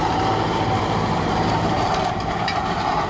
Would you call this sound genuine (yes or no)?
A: no